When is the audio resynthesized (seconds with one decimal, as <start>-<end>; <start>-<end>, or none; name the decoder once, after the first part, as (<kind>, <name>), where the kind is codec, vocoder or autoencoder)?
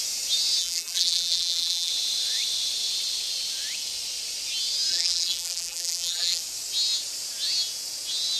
0.6-1.9 (vocoder, BigVGAN v2); 4.9-6.4